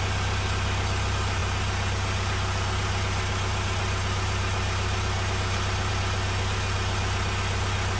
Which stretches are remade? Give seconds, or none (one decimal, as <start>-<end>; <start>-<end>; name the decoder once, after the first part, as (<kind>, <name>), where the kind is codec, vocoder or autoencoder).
none